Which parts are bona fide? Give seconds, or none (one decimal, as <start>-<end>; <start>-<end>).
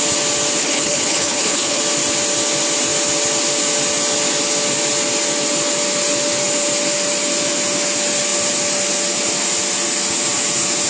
0.0-0.6; 1.8-10.9